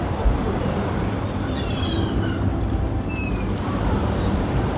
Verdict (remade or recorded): remade